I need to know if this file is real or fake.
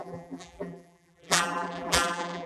fake